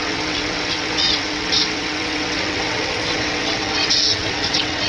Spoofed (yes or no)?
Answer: yes